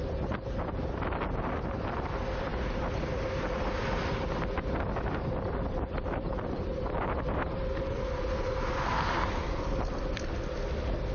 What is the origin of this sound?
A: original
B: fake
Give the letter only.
A